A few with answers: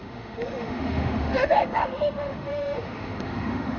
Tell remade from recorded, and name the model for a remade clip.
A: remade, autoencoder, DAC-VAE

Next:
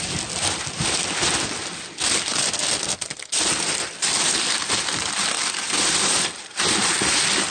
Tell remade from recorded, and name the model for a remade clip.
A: recorded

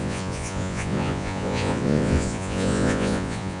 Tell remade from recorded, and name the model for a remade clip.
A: remade, vocoder, Vocos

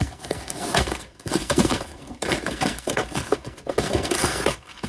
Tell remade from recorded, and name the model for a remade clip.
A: remade, codec, SNAC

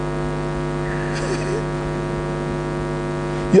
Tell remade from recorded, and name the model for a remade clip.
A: recorded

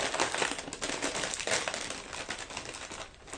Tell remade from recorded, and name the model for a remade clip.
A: recorded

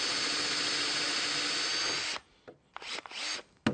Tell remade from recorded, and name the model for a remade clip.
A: recorded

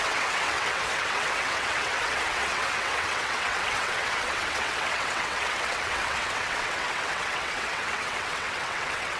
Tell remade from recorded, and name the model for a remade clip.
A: remade, vocoder, WaveNeXt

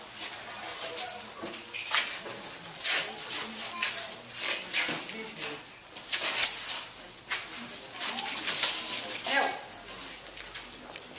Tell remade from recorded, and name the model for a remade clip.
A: recorded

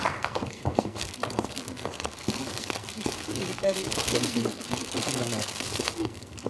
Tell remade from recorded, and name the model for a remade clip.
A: remade, codec, SNAC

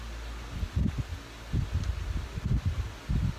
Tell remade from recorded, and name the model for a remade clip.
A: recorded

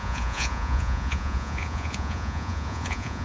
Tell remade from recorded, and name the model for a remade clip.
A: remade, vocoder, Vocos